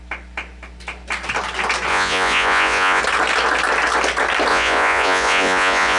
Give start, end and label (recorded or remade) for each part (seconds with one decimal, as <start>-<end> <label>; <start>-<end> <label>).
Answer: 0.0-1.9 recorded; 1.9-3.0 remade; 3.0-4.5 recorded; 4.5-6.0 remade